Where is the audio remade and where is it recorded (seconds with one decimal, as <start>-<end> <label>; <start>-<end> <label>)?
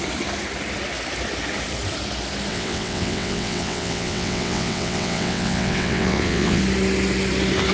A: 0.0-2.5 recorded; 2.5-6.6 remade; 6.6-7.7 recorded